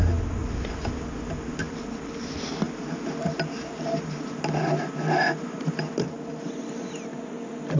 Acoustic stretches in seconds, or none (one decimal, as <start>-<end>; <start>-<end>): 0.0-7.8

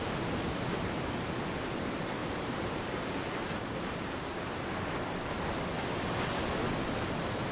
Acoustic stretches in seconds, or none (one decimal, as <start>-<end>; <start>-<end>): 0.0-2.2; 5.5-7.5

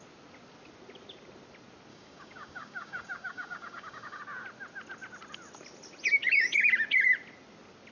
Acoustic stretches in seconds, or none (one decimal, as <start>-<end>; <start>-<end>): 0.0-1.9; 4.2-7.9

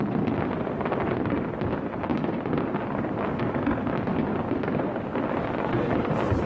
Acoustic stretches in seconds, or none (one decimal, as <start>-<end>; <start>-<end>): 0.0-6.5

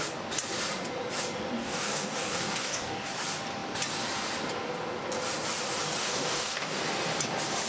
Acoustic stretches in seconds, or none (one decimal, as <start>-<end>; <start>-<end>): 0.0-1.6; 3.1-6.0; 6.8-7.7

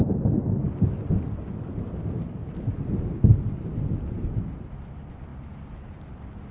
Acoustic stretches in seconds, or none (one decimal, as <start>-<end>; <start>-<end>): 0.0-2.4; 3.9-5.3

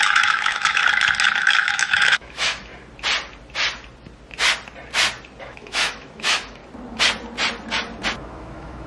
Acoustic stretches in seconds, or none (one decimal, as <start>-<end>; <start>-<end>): 0.8-1.4; 2.7-5.4; 6.6-8.2

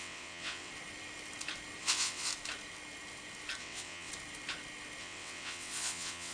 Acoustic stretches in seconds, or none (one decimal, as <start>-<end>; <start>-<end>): 0.7-1.8; 2.3-3.6; 4.1-5.0